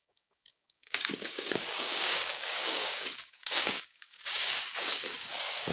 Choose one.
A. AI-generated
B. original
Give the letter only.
A